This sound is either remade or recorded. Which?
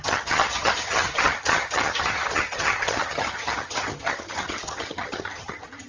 remade